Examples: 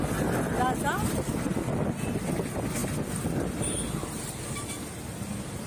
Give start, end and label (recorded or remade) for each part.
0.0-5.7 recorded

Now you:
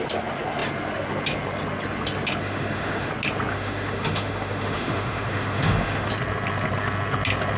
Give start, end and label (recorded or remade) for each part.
0.0-2.4 recorded; 2.4-3.1 remade; 3.1-3.5 recorded; 3.5-6.1 remade; 6.1-7.6 recorded

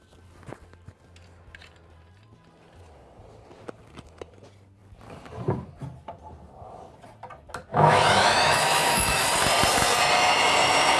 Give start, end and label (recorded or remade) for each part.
0.0-7.7 recorded; 7.7-9.2 remade; 9.2-11.0 recorded